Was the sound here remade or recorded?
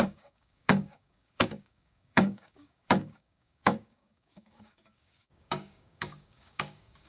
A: remade